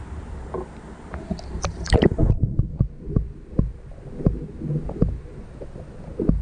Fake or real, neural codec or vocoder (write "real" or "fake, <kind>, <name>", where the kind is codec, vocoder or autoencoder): real